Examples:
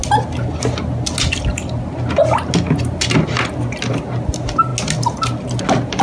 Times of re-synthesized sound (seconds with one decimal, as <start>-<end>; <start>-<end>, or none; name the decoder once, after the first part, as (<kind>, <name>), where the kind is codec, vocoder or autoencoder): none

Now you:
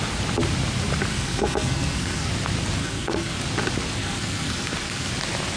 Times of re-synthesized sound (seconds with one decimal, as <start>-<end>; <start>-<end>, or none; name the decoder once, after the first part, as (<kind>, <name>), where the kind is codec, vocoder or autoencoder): 1.1-2.3 (codec, SNAC); 2.8-3.4; 4.0-5.1

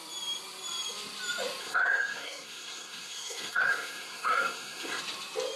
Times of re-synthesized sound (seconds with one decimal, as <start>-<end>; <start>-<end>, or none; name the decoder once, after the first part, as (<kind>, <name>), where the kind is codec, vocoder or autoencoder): 1.6-5.0 (codec, SNAC)

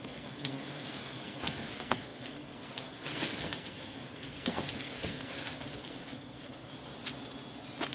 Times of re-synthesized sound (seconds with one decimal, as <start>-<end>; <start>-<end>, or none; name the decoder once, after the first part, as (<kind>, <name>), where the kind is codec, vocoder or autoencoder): 0.0-6.7 (codec, SNAC)

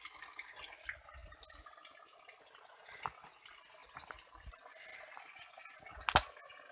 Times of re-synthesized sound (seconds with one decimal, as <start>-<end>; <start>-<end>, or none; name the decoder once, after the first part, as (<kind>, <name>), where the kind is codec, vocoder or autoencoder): none

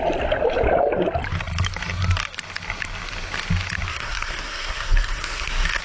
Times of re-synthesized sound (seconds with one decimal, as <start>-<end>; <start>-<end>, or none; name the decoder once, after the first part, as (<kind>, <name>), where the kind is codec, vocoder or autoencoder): 3.9-5.8 (codec, SNAC)

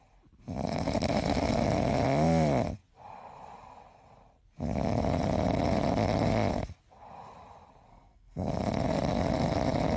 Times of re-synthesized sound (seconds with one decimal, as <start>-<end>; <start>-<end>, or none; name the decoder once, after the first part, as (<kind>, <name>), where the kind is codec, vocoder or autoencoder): 7.9-8.5 (codec, SNAC)

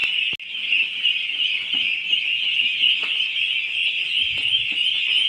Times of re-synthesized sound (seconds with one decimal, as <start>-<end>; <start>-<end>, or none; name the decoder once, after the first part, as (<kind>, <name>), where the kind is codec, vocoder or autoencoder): none